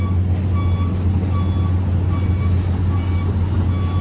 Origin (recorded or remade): recorded